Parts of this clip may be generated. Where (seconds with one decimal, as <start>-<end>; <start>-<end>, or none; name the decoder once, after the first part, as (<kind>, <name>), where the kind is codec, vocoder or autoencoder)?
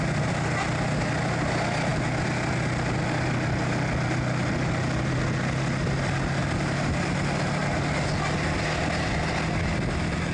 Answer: none